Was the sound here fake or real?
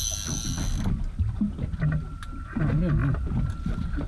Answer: real